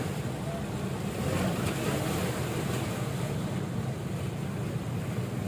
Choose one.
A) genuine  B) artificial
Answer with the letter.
A